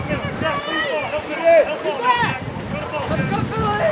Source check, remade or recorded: recorded